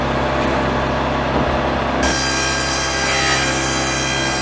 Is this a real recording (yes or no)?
yes